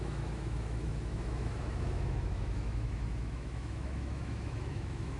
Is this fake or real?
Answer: fake